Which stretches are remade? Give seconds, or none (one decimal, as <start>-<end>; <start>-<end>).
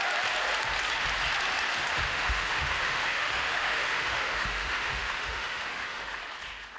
2.1-6.2